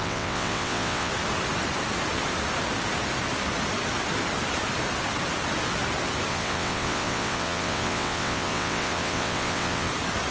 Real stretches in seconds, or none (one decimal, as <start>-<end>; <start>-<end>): 1.1-6.3; 9.9-10.3